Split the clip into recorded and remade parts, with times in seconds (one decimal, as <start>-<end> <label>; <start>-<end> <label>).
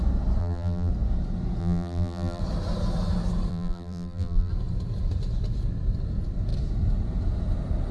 0.0-0.4 recorded; 0.4-0.9 remade; 0.9-1.6 recorded; 1.6-2.4 remade; 2.4-3.5 recorded; 3.5-4.5 remade; 4.5-7.9 recorded